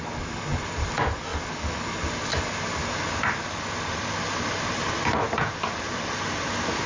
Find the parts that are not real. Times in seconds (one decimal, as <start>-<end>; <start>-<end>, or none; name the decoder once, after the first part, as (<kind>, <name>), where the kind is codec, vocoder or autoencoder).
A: none